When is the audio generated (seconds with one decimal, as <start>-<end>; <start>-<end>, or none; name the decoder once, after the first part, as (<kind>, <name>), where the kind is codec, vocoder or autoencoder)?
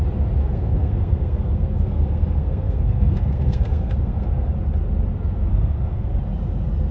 0.4-4.5 (codec, SNAC); 5.5-6.2